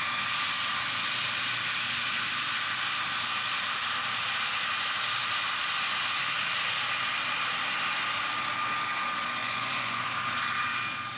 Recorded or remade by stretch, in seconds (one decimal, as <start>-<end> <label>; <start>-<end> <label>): 0.0-9.4 recorded; 9.4-10.1 remade; 10.1-11.2 recorded